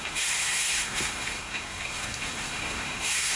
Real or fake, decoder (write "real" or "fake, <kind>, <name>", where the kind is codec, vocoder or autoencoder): fake, codec, SNAC